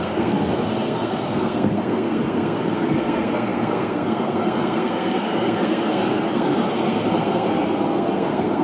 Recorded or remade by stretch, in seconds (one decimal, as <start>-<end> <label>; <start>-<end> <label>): 0.0-8.6 remade